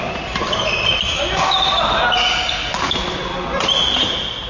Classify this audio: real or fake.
real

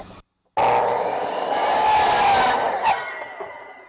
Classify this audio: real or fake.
real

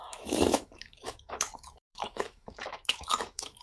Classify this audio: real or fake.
fake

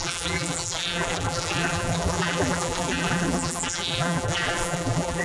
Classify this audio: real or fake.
fake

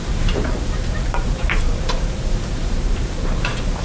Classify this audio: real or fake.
fake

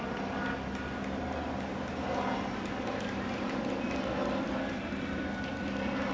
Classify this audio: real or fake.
real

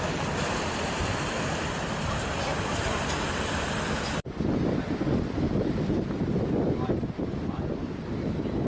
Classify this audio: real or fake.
fake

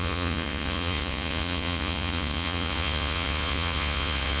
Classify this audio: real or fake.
fake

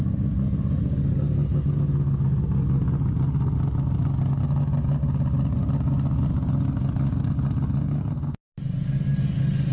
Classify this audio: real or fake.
real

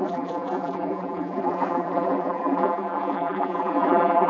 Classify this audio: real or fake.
fake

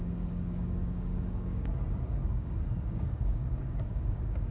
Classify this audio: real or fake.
fake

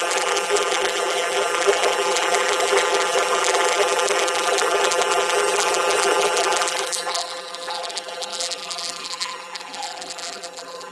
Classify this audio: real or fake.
fake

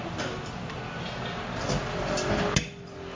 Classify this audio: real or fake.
real